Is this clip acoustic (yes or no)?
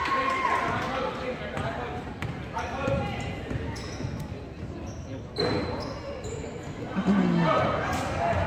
yes